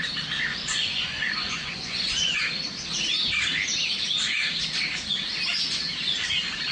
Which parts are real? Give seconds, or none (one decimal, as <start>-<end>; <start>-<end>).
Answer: 0.0-0.5; 2.4-6.7